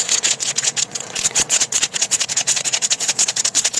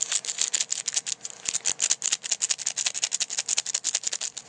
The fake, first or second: first